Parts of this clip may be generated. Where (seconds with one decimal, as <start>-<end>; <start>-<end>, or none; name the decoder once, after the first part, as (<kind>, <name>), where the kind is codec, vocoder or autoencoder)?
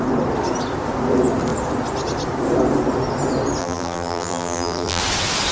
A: 3.6-5.0 (vocoder, BigVGAN v2)